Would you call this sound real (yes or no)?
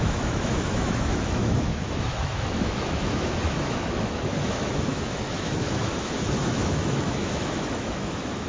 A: no